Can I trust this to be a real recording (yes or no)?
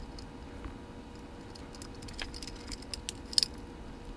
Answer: yes